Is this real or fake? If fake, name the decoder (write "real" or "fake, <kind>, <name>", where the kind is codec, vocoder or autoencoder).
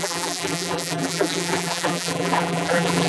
fake, vocoder, BigVGAN v2